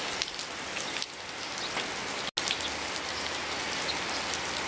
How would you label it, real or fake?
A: real